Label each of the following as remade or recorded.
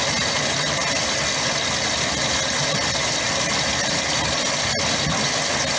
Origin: recorded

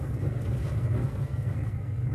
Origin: remade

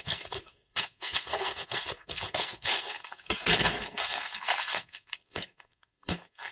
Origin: remade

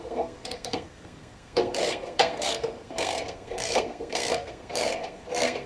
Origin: remade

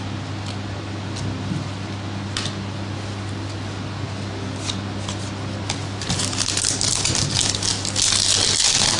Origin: recorded